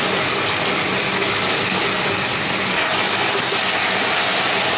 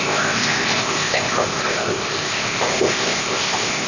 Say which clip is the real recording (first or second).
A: first